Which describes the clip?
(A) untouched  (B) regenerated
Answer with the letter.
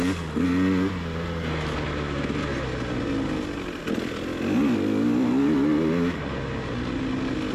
A